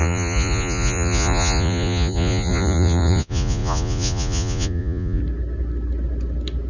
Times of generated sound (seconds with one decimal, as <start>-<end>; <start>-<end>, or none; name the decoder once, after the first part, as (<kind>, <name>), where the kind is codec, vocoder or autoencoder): 0.0-5.2 (vocoder, Vocos)